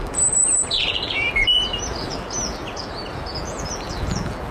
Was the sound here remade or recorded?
remade